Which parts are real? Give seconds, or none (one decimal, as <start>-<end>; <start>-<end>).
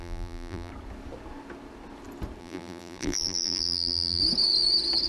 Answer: 0.7-2.4; 4.2-5.1